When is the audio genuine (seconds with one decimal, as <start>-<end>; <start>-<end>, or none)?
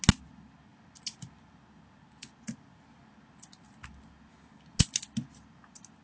0.0-6.0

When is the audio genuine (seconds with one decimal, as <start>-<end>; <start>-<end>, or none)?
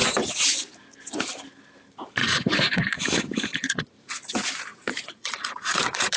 0.0-2.2; 4.1-4.7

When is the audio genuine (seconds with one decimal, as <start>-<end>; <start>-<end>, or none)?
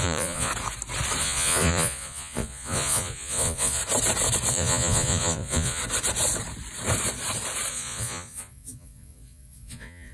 0.5-1.2; 3.8-4.5; 5.8-7.7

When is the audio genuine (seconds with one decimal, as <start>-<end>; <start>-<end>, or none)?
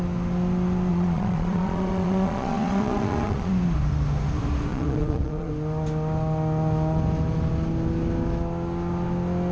0.0-0.9; 3.5-4.7; 5.5-9.5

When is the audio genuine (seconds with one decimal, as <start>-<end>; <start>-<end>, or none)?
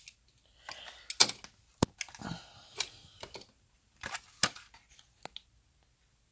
0.0-6.3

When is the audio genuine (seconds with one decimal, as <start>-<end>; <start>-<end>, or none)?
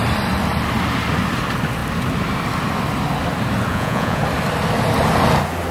0.0-3.7; 4.2-5.7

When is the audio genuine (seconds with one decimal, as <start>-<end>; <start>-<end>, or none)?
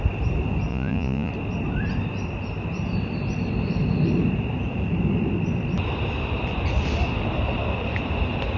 0.0-0.7; 1.3-8.6